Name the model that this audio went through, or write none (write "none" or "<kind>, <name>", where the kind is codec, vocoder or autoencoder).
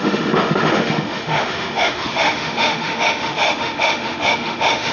autoencoder, DAC-VAE